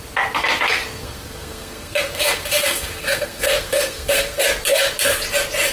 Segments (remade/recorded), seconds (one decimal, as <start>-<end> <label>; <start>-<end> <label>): 0.0-1.0 recorded; 1.0-4.4 remade; 4.4-5.7 recorded